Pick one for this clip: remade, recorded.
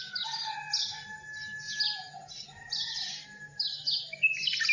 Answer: recorded